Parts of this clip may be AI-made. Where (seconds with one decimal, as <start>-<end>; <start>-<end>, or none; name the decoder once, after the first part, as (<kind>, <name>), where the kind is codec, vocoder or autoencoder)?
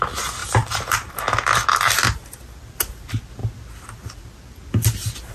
0.4-1.1 (vocoder, BigVGAN v2)